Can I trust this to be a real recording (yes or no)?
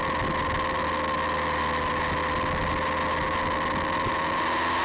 yes